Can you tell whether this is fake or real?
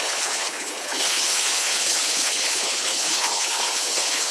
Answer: fake